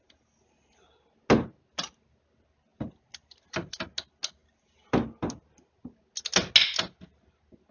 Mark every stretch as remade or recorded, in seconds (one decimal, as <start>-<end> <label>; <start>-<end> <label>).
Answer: 0.0-7.7 recorded